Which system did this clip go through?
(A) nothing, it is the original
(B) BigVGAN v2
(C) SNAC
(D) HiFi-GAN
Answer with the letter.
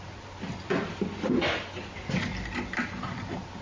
A